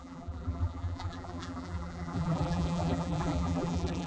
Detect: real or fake fake